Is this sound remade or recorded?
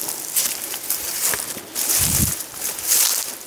recorded